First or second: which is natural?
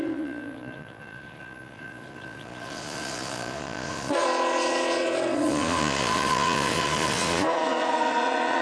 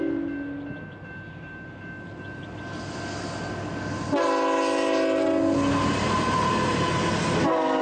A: second